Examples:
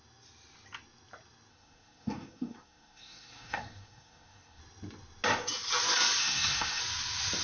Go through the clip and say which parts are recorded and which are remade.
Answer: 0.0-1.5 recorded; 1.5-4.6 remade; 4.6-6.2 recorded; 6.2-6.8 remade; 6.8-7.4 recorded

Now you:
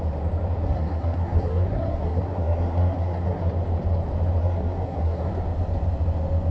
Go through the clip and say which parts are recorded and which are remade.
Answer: 0.0-0.6 recorded; 0.6-3.5 remade; 3.5-4.4 recorded; 4.4-5.3 remade; 5.3-6.5 recorded

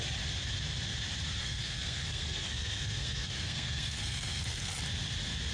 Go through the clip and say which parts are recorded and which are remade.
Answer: 0.0-1.4 recorded; 1.4-4.7 remade; 4.7-5.5 recorded

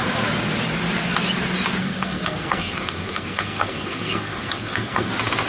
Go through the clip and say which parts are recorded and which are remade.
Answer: 0.0-1.8 recorded; 1.8-5.1 remade; 5.1-5.5 recorded

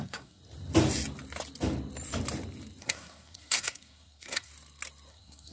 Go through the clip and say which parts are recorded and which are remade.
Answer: 0.0-0.4 remade; 0.4-2.8 recorded; 2.8-4.5 remade; 4.5-5.1 recorded; 5.1-5.5 remade

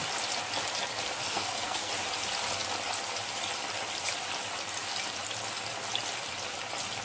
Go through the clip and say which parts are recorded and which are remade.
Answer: 0.0-1.2 recorded; 1.2-1.9 remade; 1.9-7.0 recorded

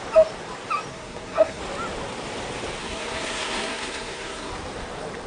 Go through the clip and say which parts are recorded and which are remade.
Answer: 0.0-0.9 recorded; 0.9-1.6 remade; 1.6-2.8 recorded; 2.8-4.5 remade; 4.5-5.3 recorded